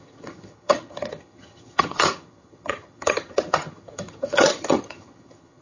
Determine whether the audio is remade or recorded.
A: remade